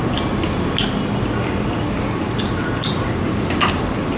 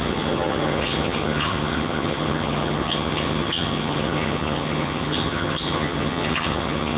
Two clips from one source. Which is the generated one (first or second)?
second